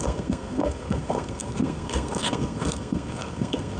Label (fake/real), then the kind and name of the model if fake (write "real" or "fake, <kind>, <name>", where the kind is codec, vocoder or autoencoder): fake, codec, SNAC